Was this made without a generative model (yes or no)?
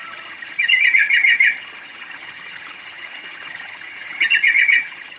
no